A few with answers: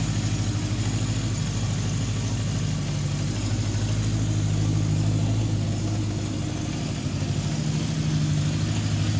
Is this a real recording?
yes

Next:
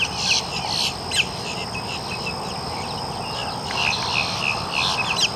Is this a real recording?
yes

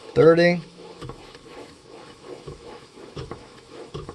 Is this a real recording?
no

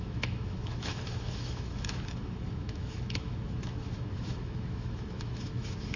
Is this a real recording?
no